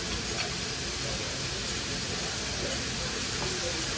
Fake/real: real